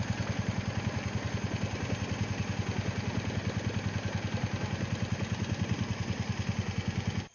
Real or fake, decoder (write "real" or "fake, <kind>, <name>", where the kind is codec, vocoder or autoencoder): real